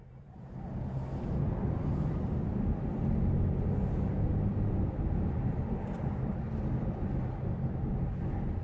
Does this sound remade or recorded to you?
recorded